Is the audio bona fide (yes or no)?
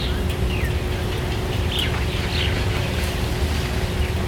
yes